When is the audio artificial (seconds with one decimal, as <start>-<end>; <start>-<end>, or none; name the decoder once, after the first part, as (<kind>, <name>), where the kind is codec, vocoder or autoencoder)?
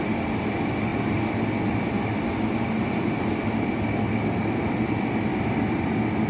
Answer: none